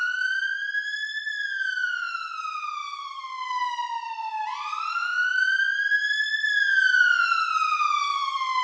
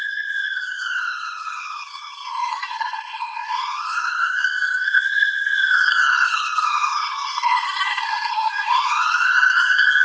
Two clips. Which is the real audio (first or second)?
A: first